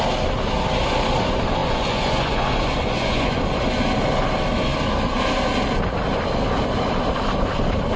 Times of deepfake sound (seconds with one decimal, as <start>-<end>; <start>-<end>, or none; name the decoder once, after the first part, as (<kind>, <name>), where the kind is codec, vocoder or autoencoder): 1.6-3.4 (vocoder, Vocos)